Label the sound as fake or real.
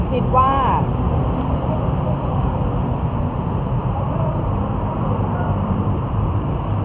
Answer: fake